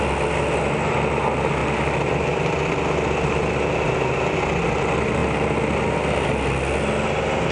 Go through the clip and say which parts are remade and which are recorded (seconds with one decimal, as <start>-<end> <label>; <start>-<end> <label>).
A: 0.0-7.5 recorded